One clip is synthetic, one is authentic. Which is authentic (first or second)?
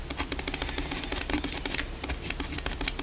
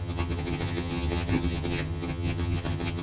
first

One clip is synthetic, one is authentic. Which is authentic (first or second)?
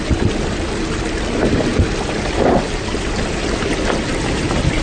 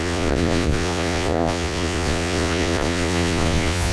first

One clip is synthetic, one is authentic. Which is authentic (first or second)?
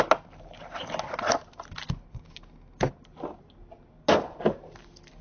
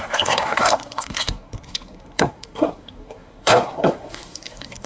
first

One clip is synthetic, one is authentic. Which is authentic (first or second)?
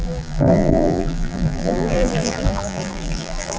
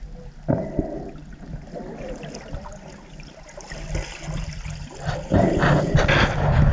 second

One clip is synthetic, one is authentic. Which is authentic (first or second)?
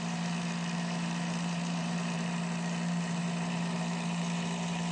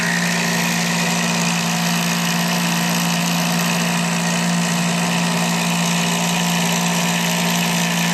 second